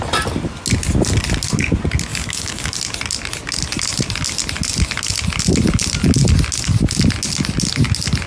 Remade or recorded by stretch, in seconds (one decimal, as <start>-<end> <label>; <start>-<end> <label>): 0.0-2.1 recorded; 2.1-2.8 remade; 2.8-8.3 recorded